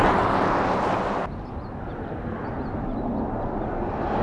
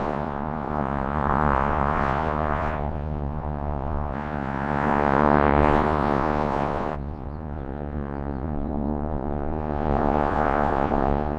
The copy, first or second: second